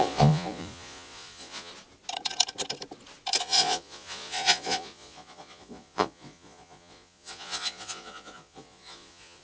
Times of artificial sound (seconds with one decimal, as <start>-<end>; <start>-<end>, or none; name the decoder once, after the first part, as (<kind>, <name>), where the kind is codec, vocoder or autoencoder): 0.0-1.7 (vocoder, Vocos); 3.4-9.4